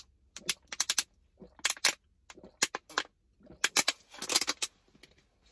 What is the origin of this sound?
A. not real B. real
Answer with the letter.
B